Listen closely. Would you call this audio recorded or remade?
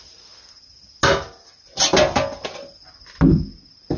recorded